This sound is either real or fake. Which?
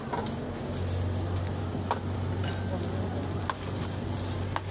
real